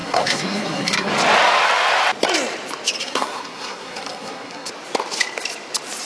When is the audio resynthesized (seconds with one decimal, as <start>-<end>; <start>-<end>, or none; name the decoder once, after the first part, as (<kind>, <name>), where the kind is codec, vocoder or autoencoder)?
0.0-1.1 (codec, SNAC); 3.0-4.7